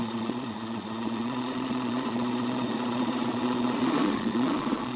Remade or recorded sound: remade